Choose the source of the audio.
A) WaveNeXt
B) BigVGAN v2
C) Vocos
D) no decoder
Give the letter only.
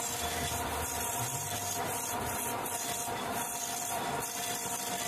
B